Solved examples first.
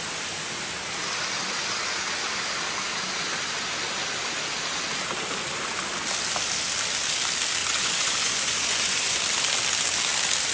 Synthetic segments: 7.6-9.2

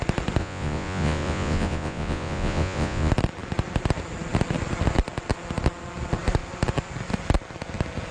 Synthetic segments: 0.4-3.1

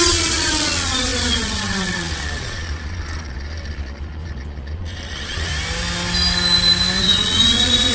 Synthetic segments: 0.0-5.5; 7.0-7.9

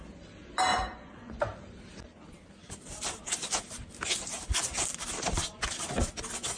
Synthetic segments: 0.7-1.4